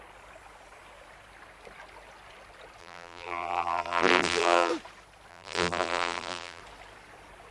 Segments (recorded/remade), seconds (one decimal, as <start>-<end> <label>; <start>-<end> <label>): 0.0-2.8 recorded; 2.8-4.7 remade; 4.7-5.3 recorded; 5.3-6.6 remade; 6.6-7.5 recorded